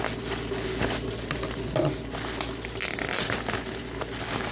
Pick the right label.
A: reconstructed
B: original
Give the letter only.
B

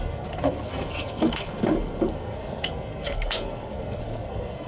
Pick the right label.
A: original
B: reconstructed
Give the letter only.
B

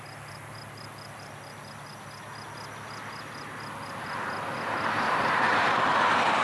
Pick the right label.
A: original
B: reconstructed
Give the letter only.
A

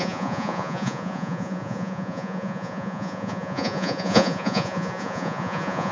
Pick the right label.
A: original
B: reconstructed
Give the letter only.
B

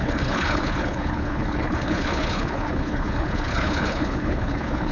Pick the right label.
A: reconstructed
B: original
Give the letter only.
A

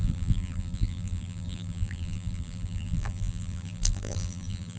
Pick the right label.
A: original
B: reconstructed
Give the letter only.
B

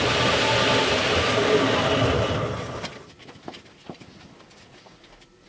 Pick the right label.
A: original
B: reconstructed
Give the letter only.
A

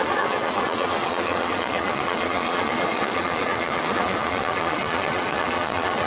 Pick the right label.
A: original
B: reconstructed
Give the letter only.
B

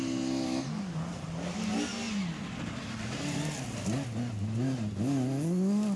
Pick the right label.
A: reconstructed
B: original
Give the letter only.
B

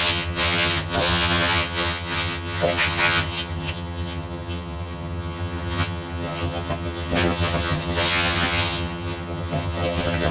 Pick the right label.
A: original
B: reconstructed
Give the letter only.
B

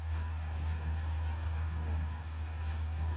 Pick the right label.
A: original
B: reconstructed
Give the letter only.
B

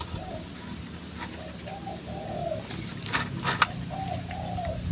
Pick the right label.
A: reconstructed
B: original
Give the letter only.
B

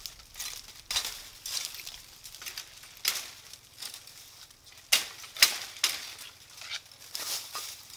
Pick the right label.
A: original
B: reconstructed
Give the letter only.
A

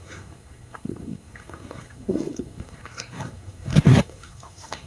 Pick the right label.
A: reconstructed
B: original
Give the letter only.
A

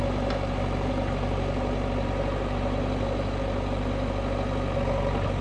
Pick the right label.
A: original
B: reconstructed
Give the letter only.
A